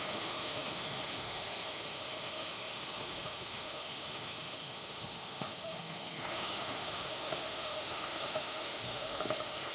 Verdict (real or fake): fake